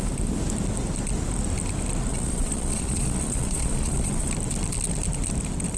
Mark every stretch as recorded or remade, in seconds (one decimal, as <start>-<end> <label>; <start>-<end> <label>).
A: 0.0-2.1 recorded; 2.1-4.3 remade; 4.3-5.8 recorded